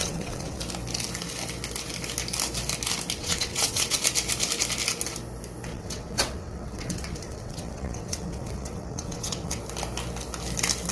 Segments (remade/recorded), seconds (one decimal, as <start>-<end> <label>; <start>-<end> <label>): 0.0-0.6 remade; 0.6-3.2 recorded; 3.2-4.0 remade; 4.0-5.7 recorded; 5.7-9.6 remade; 9.6-10.9 recorded